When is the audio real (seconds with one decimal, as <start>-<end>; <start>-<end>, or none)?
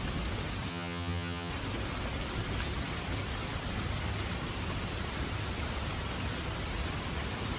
0.0-0.7; 1.5-7.6